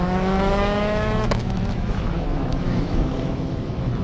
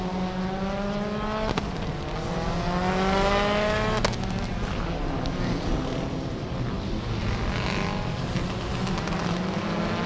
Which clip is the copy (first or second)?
first